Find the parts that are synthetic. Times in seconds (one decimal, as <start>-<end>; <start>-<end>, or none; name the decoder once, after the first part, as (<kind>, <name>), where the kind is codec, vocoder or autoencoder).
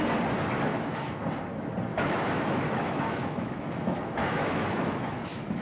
0.7-1.2 (autoencoder, DAC-VAE); 1.9-5.6